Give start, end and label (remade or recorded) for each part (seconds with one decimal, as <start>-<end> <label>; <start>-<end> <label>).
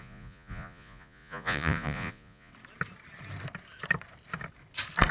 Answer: 0.0-2.5 remade; 2.5-5.1 recorded